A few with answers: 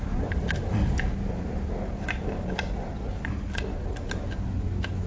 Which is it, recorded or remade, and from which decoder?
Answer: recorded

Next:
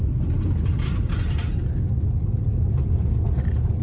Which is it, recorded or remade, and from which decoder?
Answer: recorded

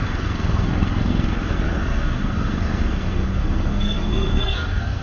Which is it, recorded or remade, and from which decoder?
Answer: remade, codec, SNAC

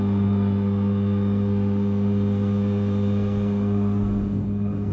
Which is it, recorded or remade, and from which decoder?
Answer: remade, codec, SNAC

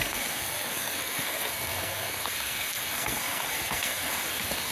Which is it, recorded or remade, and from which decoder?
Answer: remade, codec, SNAC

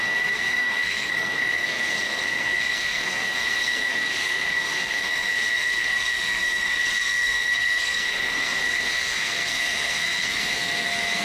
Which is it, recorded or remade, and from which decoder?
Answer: remade, codec, SNAC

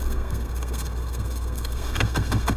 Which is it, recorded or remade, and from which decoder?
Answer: remade, codec, SNAC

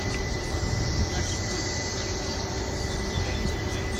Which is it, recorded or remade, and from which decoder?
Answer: recorded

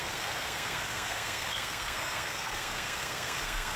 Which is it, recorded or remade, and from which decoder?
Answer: remade, codec, SNAC